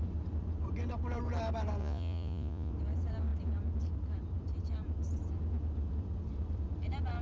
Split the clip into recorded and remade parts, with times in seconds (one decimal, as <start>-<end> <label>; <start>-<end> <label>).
0.0-1.8 recorded; 1.8-2.7 remade; 2.7-7.2 recorded